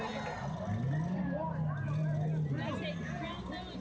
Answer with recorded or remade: recorded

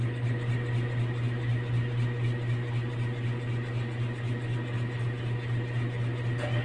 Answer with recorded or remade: recorded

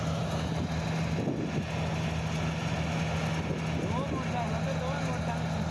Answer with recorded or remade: recorded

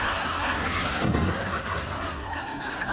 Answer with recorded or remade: remade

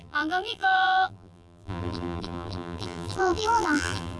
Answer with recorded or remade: remade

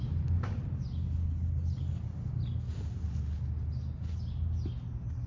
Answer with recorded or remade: recorded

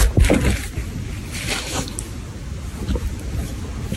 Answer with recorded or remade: recorded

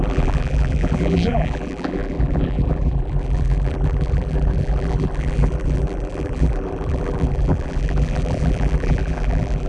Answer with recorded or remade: remade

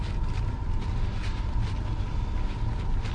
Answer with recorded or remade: recorded